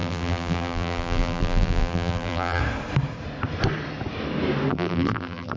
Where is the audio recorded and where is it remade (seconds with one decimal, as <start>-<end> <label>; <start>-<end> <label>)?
0.0-2.6 remade; 2.6-4.7 recorded; 4.7-5.6 remade